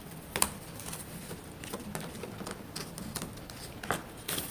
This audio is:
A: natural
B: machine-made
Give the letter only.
A